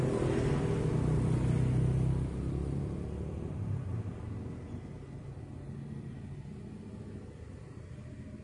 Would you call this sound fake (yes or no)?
no